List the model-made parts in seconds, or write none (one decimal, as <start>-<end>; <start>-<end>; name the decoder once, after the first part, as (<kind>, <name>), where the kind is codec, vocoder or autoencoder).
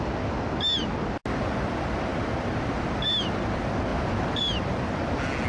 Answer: none